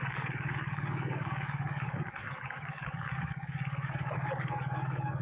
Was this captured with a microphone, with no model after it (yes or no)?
no